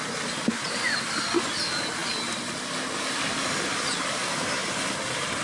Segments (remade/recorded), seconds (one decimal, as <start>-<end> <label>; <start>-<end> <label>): 0.0-4.2 recorded; 4.2-4.7 remade; 4.7-5.4 recorded